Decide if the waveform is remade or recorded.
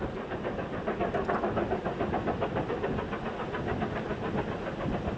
recorded